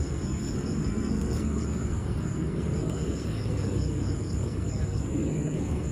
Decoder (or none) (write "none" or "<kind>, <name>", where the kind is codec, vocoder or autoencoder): codec, SNAC